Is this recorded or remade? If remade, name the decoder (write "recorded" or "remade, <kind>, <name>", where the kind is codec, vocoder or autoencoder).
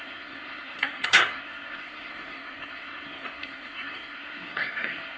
remade, codec, SNAC